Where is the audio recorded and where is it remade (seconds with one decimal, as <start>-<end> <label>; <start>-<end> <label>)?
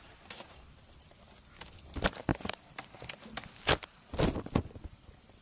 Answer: 0.0-5.4 recorded